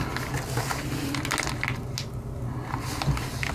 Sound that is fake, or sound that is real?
real